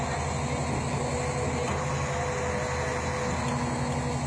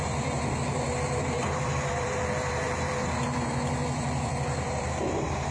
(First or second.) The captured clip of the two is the first